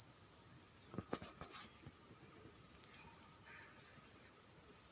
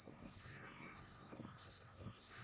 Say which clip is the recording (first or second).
first